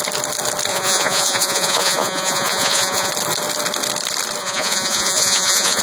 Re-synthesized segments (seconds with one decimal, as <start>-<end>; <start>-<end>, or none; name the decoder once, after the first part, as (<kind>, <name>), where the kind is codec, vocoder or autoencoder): 0.7-3.1 (vocoder, Vocos); 4.4-5.8